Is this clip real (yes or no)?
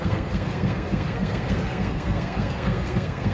no